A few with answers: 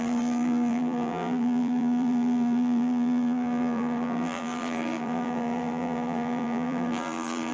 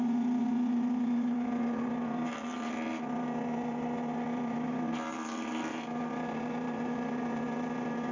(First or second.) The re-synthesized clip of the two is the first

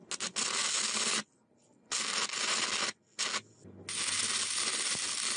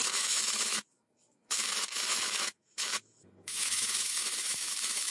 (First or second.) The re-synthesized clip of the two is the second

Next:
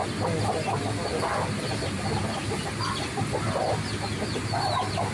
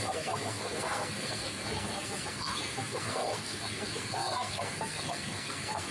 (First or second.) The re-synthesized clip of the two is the second